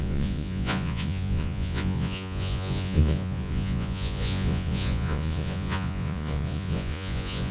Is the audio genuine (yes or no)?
no